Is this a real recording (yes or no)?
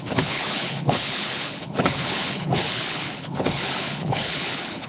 no